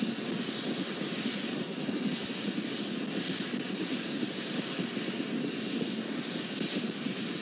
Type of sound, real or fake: real